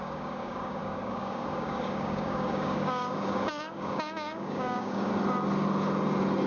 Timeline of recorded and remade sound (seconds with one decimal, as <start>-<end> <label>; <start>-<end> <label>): 0.0-5.1 remade; 5.1-6.5 recorded

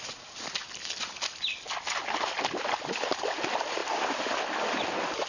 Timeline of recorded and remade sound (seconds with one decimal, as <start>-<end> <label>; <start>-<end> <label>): 0.0-5.3 recorded